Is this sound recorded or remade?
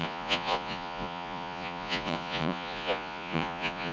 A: remade